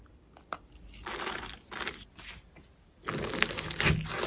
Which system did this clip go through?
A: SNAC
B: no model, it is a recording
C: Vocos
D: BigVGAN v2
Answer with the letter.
B